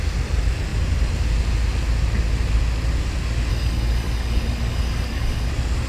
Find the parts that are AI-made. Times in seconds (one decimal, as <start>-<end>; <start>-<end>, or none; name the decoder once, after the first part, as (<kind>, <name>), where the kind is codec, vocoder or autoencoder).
3.5-5.5 (codec, DAC)